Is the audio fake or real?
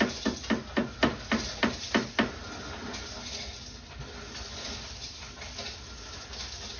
real